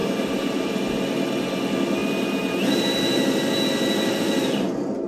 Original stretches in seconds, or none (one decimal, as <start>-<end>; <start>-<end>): 0.7-5.1